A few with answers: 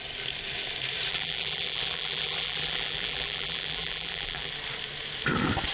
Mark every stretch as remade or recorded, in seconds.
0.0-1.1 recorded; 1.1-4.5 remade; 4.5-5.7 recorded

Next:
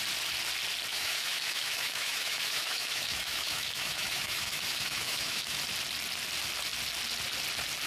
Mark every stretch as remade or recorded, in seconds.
0.0-0.9 recorded; 0.9-5.6 remade; 5.6-7.9 recorded

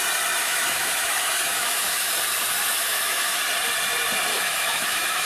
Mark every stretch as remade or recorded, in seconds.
0.0-0.4 recorded; 0.4-2.1 remade; 2.1-2.8 recorded; 2.8-3.4 remade; 3.4-4.3 recorded; 4.3-5.3 remade

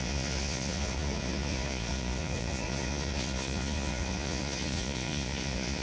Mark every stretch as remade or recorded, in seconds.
0.0-5.8 remade

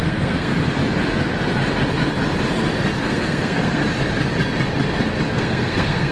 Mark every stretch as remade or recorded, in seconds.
0.0-0.5 remade; 0.5-3.0 recorded; 3.0-3.8 remade; 3.8-5.3 recorded; 5.3-6.1 remade

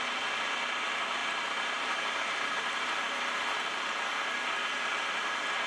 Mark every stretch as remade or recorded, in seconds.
0.0-5.7 recorded